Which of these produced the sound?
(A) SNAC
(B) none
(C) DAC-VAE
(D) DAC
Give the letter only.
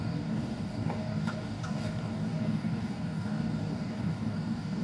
D